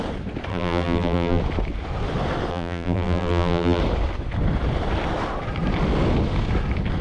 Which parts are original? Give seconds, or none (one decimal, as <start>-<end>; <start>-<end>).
0.0-0.5; 1.4-2.5; 3.8-7.0